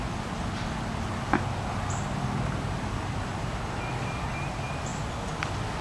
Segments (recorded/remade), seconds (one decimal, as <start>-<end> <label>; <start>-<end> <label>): 0.0-5.8 recorded